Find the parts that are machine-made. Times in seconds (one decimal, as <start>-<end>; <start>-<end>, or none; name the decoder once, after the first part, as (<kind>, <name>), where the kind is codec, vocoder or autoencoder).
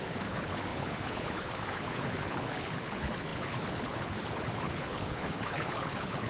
0.0-6.3 (codec, HILCodec)